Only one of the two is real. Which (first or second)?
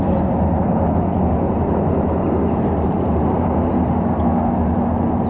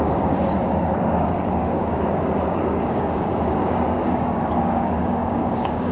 first